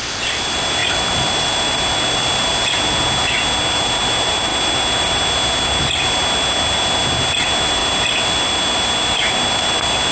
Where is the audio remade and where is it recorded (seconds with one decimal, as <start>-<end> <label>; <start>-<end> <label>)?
0.0-10.1 recorded